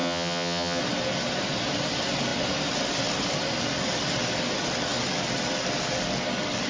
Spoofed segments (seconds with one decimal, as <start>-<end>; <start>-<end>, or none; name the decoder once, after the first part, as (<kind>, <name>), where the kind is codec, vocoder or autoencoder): 0.0-0.8 (vocoder, HiFi-GAN)